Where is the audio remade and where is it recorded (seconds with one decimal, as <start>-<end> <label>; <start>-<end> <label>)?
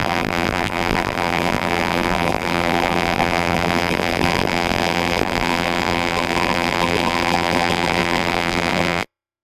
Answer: 0.0-9.4 remade